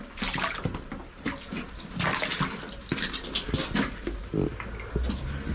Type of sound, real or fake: real